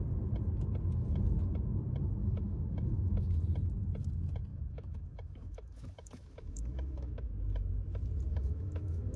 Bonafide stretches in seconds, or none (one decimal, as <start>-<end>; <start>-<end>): 0.0-2.2; 3.3-4.5; 7.3-8.3